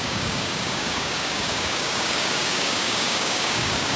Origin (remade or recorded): remade